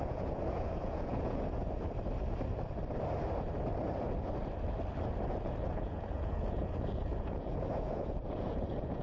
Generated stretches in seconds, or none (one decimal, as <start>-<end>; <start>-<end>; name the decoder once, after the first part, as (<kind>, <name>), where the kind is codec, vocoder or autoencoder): 0.0-1.6 (vocoder, Vocos); 5.4-9.0